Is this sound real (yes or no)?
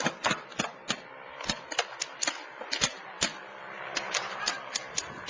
yes